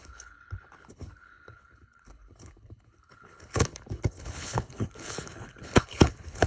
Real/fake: fake